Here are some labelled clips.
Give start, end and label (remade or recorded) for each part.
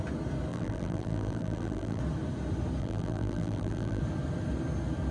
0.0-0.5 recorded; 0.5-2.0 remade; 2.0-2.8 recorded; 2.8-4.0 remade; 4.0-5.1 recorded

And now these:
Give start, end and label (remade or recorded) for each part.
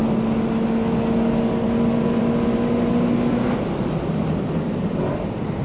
0.0-5.6 recorded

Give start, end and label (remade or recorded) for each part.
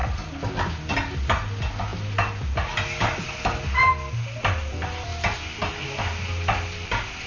0.0-7.3 recorded